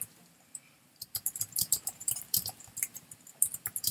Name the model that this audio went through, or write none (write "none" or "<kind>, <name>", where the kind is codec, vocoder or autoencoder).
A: vocoder, BigVGAN v2